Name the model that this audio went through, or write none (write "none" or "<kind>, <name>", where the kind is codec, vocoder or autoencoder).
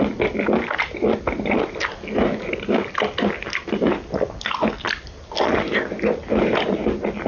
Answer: none